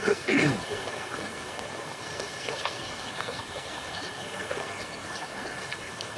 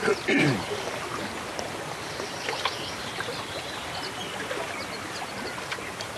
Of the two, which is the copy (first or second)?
first